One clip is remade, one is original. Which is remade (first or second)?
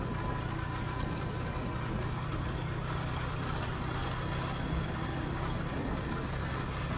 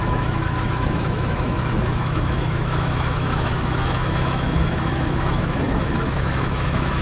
second